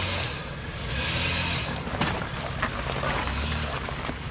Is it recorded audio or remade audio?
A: recorded